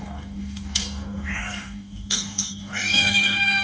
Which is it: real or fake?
fake